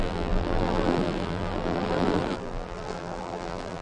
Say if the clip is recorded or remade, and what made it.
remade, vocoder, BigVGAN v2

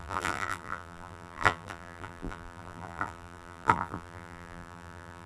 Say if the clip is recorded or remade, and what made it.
remade, vocoder, BigVGAN v2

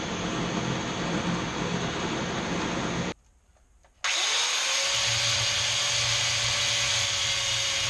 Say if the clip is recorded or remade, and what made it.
recorded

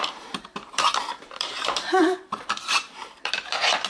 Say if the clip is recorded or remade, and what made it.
remade, vocoder, BigVGAN v2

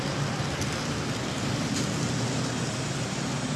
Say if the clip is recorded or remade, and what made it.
recorded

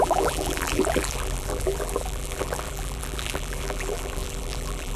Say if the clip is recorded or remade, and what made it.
remade, vocoder, BigVGAN v2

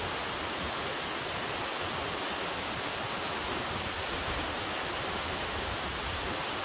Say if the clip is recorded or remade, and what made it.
recorded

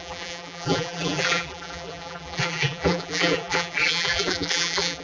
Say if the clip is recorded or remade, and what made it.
remade, vocoder, BigVGAN v2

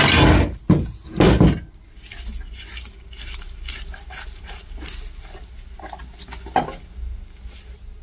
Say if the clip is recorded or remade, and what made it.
recorded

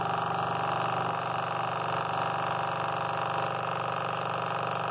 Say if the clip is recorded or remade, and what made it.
recorded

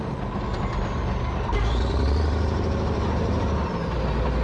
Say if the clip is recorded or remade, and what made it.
remade, vocoder, BigVGAN v2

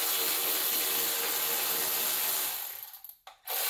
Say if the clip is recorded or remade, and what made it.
recorded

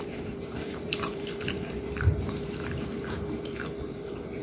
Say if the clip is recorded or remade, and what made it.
remade, vocoder, BigVGAN v2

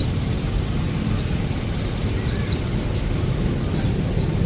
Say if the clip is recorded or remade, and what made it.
recorded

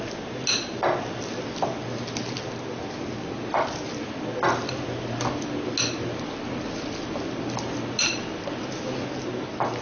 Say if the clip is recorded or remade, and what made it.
recorded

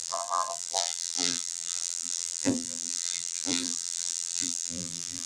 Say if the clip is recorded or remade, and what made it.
remade, vocoder, BigVGAN v2